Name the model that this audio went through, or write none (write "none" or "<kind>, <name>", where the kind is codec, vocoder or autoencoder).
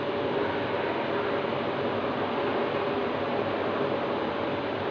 none